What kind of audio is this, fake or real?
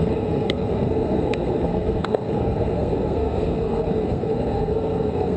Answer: fake